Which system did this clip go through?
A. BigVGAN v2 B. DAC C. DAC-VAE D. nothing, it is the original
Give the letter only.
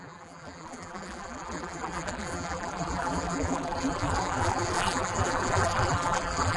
A